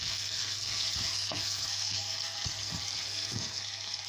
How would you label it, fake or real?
fake